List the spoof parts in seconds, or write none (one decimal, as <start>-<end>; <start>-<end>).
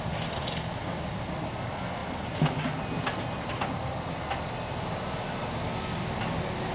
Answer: none